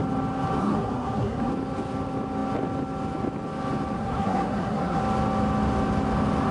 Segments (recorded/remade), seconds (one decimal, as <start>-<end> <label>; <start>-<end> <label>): 0.0-0.6 recorded; 0.6-1.5 remade; 1.5-4.0 recorded; 4.0-5.0 remade; 5.0-6.5 recorded